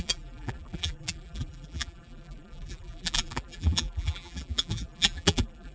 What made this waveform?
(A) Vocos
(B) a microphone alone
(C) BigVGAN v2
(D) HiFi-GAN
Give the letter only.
C